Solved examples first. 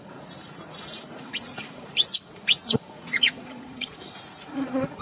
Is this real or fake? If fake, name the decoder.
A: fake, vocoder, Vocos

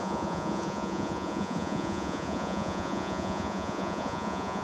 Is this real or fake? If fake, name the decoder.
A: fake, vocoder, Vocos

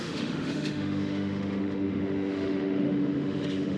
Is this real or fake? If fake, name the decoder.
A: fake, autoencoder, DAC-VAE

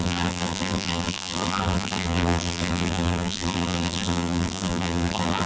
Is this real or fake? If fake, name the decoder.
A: fake, vocoder, BigVGAN v2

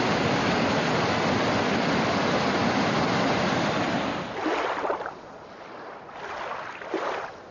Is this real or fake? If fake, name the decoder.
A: real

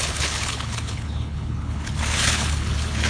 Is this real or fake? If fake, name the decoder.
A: fake, codec, HILCodec